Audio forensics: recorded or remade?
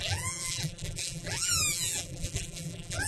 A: remade